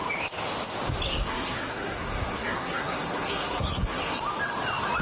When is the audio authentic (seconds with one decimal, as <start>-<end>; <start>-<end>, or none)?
0.0-1.2; 4.2-5.0